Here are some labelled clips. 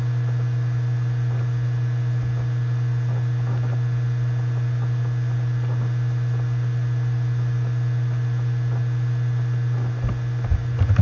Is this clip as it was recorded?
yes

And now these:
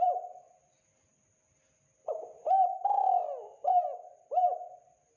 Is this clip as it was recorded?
yes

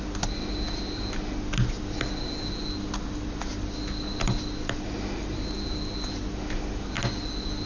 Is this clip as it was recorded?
yes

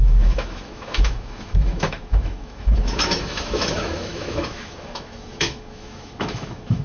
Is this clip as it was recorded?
no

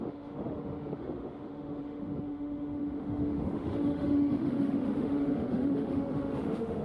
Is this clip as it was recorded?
no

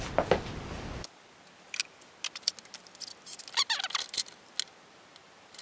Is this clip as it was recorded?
yes